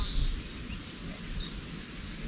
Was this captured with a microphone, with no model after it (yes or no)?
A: yes